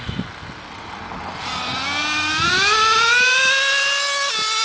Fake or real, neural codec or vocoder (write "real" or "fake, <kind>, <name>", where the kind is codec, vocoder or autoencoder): real